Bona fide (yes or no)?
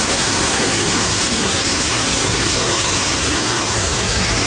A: no